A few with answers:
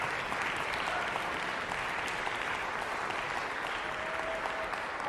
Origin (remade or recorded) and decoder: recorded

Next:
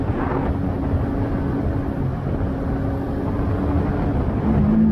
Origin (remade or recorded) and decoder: recorded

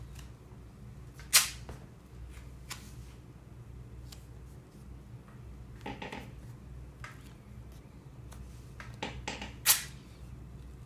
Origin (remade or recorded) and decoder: recorded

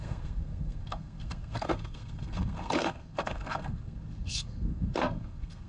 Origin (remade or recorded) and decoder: remade, codec, SNAC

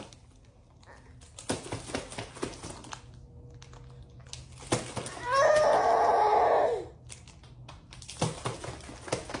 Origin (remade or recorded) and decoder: recorded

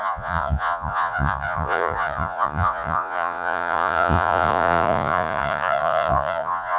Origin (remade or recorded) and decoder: remade, vocoder, Vocos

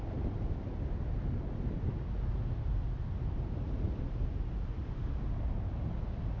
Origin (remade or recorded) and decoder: recorded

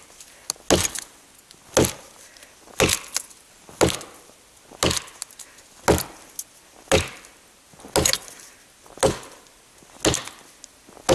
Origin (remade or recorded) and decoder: recorded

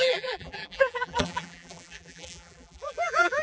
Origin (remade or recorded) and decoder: remade, vocoder, BigVGAN v2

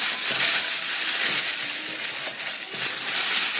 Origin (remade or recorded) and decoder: recorded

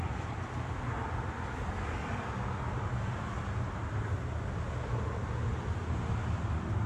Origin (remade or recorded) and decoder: recorded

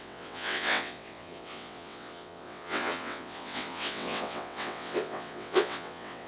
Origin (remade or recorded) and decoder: remade, vocoder, WaveNeXt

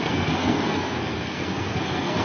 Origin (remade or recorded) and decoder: remade, codec, SNAC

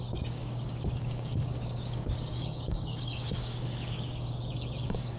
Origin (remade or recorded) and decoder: remade, codec, DAC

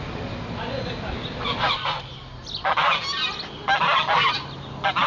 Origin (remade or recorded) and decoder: recorded